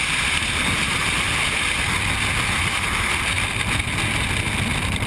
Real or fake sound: real